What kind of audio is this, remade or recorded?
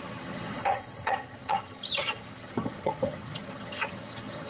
remade